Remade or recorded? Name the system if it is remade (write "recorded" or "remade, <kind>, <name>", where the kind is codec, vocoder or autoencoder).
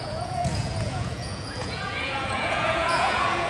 remade, vocoder, Vocos